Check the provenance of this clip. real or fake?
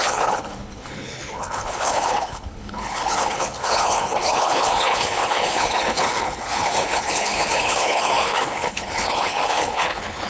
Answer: fake